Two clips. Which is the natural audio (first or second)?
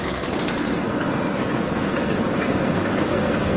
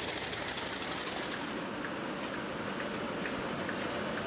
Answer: second